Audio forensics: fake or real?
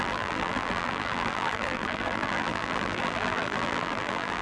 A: fake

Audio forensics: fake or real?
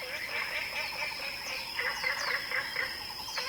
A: fake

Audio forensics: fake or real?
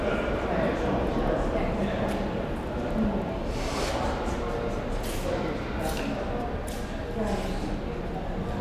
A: real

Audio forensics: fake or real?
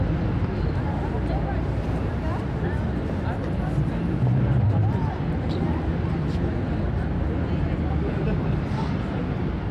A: real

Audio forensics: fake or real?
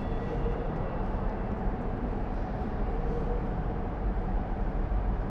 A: fake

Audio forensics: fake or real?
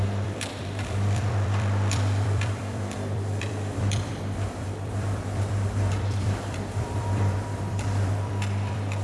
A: fake